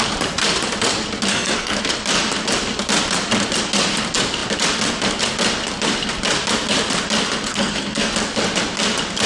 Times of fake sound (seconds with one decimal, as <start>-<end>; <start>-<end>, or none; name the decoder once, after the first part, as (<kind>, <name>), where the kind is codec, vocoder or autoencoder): 1.3-1.8 (codec, SNAC); 7.5-8.1